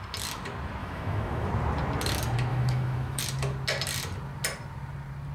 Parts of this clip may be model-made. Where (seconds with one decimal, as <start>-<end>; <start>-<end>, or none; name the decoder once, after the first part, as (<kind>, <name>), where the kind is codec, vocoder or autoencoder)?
0.8-1.5 (autoencoder, DAC-VAE); 2.5-3.2